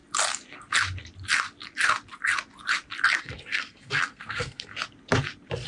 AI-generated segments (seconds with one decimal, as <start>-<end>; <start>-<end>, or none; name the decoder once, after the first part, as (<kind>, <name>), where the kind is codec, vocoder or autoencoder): 3.2-4.7 (codec, SNAC)